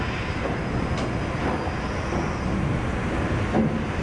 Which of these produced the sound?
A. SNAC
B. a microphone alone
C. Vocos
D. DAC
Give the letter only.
B